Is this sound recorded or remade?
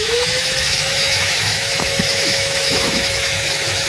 remade